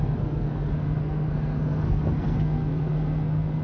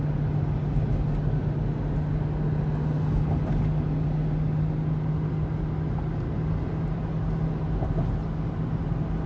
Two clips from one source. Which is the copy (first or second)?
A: first